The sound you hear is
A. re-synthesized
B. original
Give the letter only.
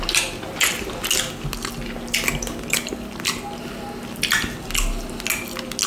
B